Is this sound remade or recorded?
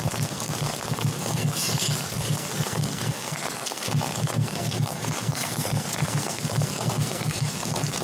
remade